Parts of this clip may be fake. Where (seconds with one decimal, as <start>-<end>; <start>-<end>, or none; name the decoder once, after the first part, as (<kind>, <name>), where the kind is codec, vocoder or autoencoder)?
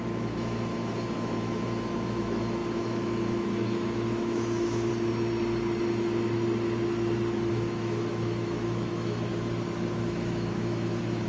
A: 0.0-4.9 (autoencoder, DAC-VAE); 7.5-9.3; 9.9-11.3